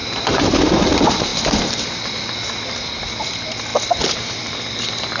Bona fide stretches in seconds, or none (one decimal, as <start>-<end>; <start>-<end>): 0.6-5.2